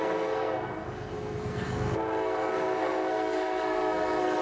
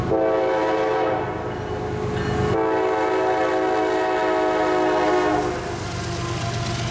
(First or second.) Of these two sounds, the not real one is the first